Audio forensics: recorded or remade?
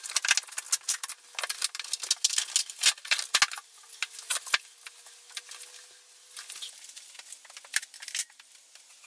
recorded